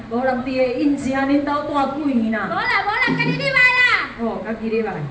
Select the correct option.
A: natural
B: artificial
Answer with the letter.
B